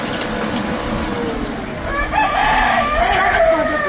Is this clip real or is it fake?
real